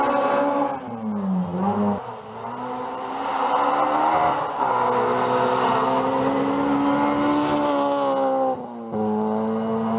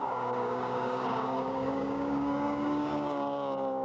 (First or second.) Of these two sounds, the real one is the first